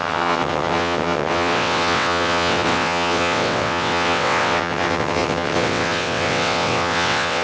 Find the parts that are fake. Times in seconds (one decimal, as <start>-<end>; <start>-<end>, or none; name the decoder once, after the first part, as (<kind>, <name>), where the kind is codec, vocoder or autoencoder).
0.0-7.4 (vocoder, WaveNeXt)